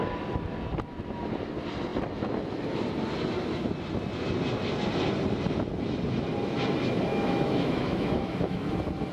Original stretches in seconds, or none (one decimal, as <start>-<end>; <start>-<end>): 0.0-7.1; 8.7-9.1